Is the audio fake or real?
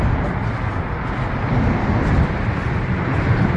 real